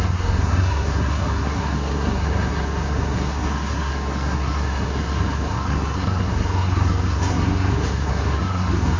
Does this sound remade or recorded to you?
remade